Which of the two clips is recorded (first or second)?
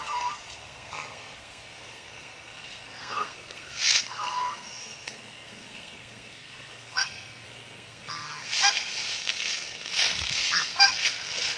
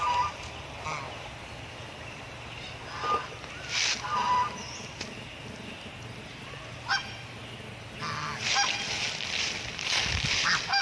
second